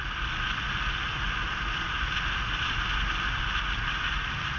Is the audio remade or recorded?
recorded